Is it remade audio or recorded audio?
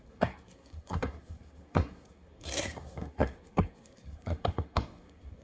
remade